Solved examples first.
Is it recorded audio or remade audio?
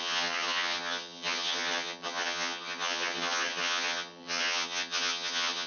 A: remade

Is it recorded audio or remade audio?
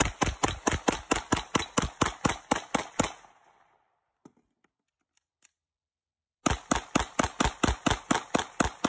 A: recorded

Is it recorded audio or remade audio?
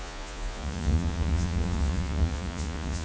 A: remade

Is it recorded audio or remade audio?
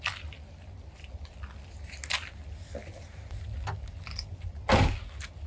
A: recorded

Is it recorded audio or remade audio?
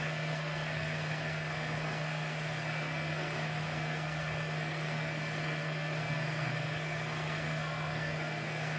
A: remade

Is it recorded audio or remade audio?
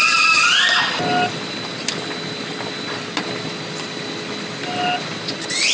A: recorded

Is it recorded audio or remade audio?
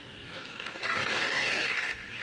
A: remade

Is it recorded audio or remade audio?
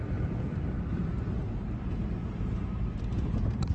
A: remade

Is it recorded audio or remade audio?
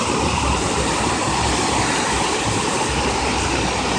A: recorded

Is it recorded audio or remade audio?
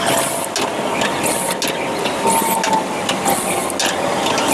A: recorded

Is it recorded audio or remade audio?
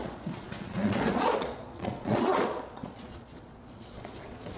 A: remade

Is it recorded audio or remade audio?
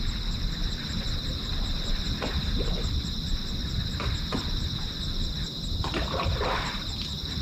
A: recorded